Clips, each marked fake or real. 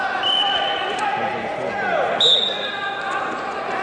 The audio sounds real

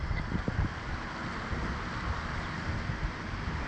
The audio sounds real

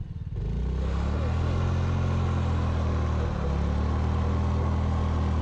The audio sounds real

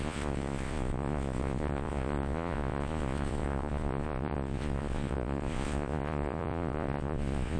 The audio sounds fake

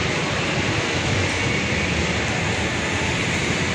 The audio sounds real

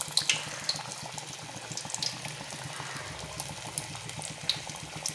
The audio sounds real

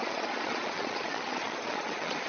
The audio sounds fake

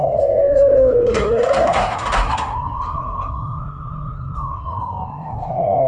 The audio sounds fake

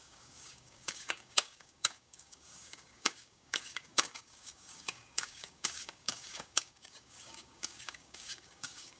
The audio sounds fake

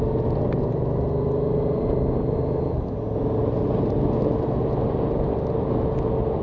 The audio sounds real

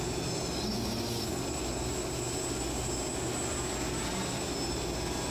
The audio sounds real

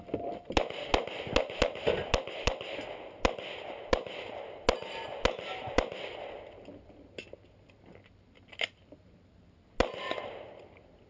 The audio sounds real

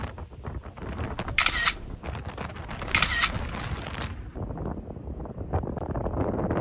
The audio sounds real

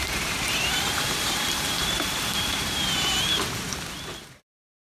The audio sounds fake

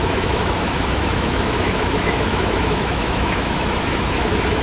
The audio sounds fake